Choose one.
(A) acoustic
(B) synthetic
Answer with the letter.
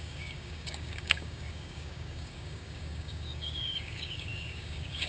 B